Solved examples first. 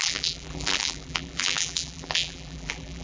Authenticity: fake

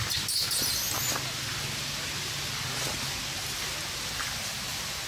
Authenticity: real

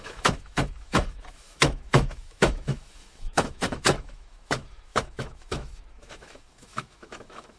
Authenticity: fake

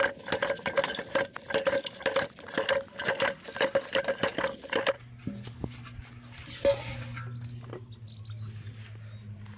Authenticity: real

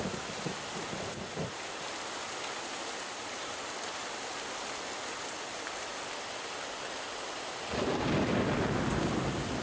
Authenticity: real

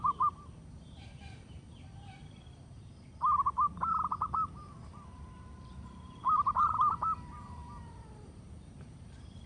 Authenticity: fake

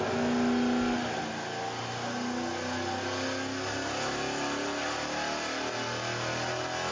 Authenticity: real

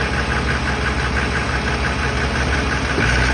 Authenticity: real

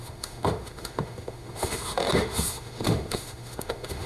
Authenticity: fake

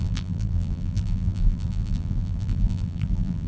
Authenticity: fake